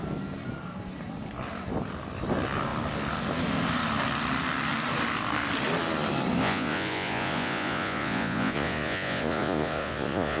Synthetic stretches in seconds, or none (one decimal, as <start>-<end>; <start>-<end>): 6.4-10.4